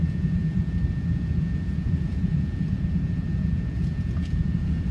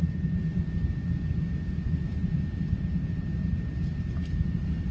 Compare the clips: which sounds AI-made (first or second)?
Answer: first